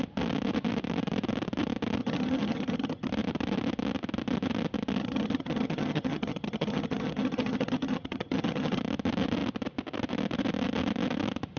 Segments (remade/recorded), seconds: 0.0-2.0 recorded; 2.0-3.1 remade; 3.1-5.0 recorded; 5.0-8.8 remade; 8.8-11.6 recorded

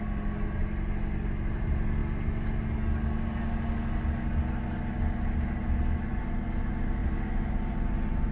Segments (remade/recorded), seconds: 0.0-8.3 recorded

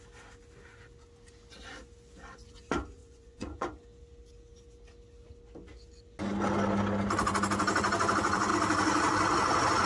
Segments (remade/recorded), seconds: 0.0-3.0 recorded; 3.0-3.7 remade; 3.7-9.9 recorded

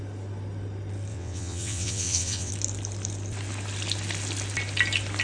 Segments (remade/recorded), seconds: 0.0-1.1 recorded; 1.1-2.5 remade; 2.5-5.2 recorded

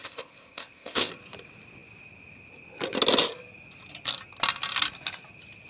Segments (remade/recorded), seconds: 0.0-1.1 remade; 1.1-5.7 recorded

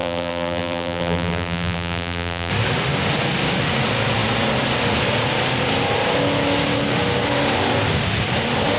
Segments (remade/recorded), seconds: 0.0-2.5 remade; 2.5-8.8 recorded

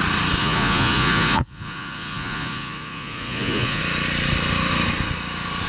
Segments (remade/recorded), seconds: 0.0-0.4 recorded; 0.4-3.8 remade; 3.8-5.7 recorded

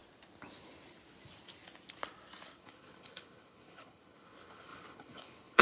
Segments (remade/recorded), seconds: 0.0-2.6 recorded; 2.6-5.6 remade